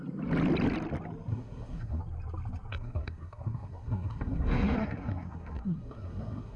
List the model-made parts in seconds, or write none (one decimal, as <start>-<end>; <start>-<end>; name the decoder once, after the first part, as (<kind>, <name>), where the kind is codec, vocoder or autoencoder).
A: 1.3-2.0 (codec, SNAC); 2.7-6.6

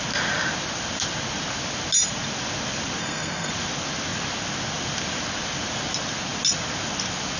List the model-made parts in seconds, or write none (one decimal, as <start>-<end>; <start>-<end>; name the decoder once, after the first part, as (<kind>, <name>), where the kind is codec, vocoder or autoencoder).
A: 3.0-3.5 (codec, SNAC)